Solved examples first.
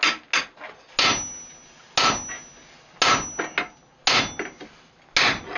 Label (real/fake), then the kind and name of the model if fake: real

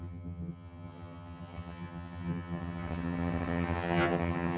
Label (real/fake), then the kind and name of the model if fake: fake, vocoder, HiFi-GAN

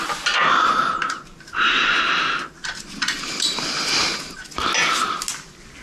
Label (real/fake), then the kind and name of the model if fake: real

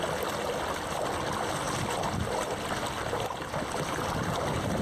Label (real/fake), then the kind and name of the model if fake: real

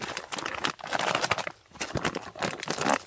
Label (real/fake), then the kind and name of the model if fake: real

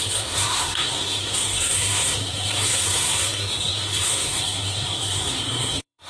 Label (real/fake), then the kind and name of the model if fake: fake, codec, SNAC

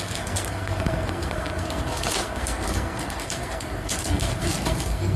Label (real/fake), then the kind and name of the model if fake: fake, codec, SNAC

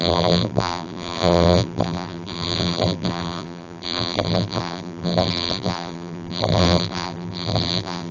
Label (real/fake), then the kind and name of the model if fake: fake, vocoder, BigVGAN v2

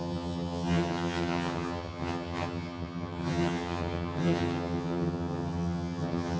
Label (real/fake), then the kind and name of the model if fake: fake, vocoder, HiFi-GAN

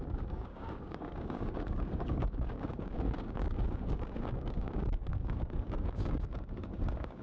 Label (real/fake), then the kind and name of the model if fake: fake, codec, DAC